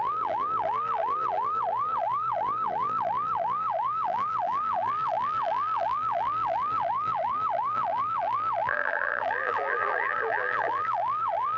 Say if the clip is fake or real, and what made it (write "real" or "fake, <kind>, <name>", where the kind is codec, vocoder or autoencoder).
fake, vocoder, BigVGAN v2